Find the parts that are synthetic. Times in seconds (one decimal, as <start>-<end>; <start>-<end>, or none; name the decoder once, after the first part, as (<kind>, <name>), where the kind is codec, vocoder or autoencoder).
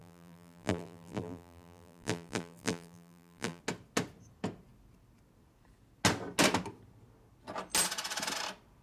0.0-3.6 (vocoder, BigVGAN v2)